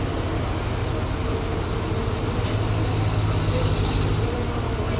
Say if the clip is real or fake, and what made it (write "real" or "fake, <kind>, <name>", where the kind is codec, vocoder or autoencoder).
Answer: real